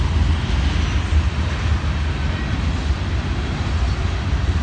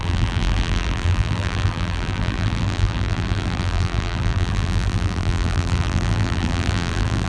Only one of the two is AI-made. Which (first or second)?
second